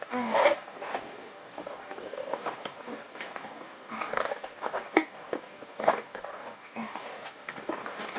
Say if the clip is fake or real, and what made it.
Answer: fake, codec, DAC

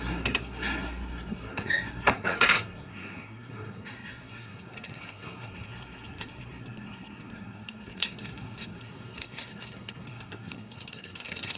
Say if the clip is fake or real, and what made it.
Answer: fake, codec, SNAC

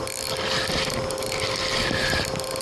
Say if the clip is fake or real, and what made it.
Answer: real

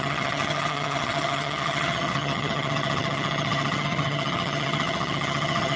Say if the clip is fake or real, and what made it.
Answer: fake, vocoder, HiFi-GAN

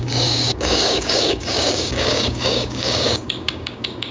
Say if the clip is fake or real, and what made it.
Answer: fake, codec, DAC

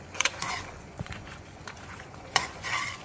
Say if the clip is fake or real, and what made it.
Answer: fake, vocoder, Vocos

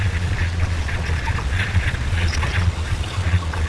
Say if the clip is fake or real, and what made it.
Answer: fake, vocoder, Vocos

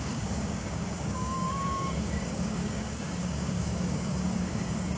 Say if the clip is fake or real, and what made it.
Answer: fake, codec, DAC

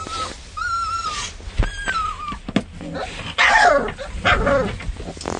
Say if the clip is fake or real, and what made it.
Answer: real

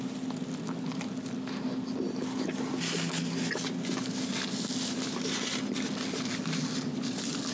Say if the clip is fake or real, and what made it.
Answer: real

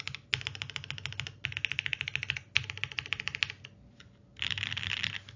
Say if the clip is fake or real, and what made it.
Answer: real